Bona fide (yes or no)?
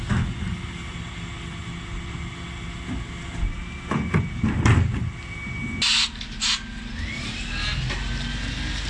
yes